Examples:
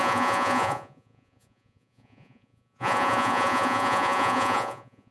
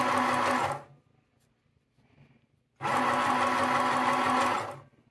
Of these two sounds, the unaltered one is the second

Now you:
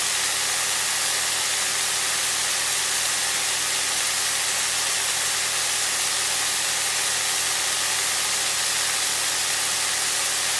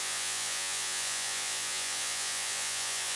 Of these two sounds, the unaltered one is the first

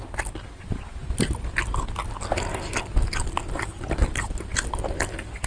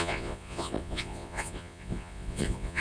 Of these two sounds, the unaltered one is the first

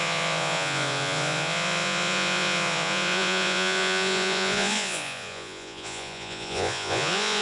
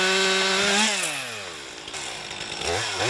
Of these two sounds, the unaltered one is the second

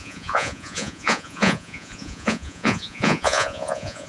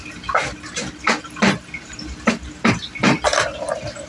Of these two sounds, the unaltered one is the second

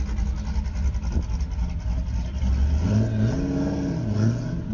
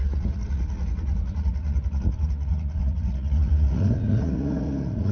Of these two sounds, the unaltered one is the first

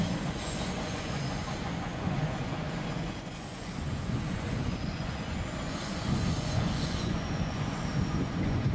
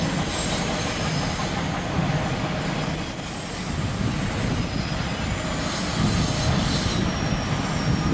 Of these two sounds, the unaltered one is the second